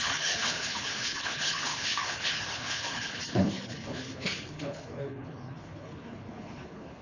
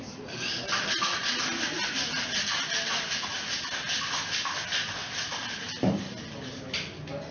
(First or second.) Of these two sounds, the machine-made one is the first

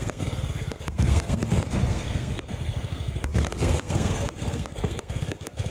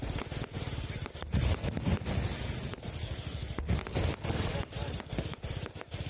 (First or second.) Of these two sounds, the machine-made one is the first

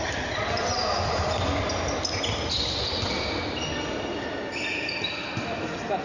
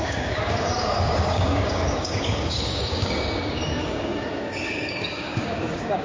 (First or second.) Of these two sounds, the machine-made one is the second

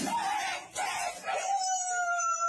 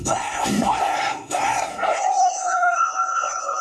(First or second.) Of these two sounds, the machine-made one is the second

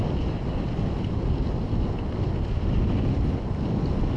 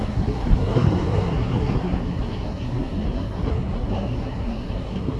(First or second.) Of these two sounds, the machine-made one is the second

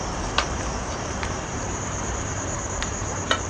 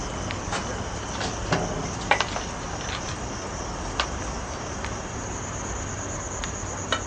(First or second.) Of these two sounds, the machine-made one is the first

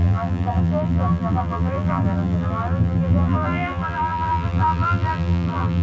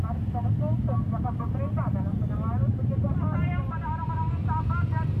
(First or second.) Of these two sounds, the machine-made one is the first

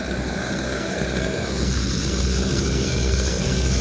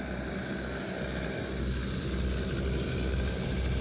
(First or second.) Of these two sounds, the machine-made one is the first